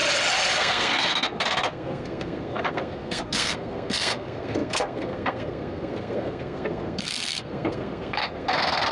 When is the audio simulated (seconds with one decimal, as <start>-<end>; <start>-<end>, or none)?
0.6-8.9